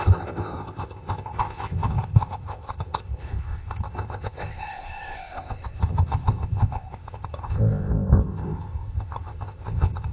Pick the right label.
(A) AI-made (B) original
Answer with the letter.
A